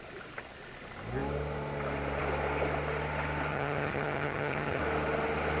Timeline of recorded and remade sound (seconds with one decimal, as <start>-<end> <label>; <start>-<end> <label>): 0.0-3.5 recorded; 3.5-4.8 remade; 4.8-5.6 recorded